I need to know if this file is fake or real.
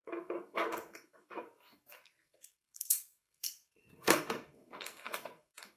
fake